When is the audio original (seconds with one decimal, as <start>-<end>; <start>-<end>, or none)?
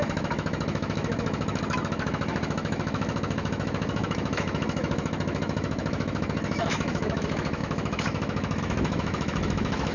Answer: none